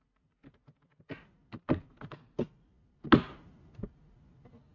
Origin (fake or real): real